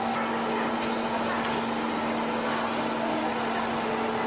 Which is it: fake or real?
real